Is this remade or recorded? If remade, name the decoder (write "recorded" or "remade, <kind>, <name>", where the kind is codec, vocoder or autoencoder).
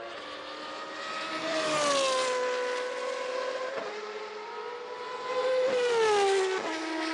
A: recorded